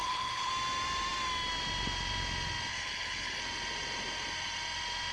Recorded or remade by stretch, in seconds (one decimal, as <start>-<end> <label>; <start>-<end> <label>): 0.0-0.5 remade; 0.5-2.7 recorded; 2.7-3.4 remade; 3.4-5.1 recorded